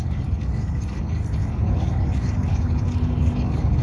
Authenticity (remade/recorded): remade